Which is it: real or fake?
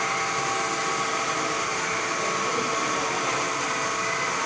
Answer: real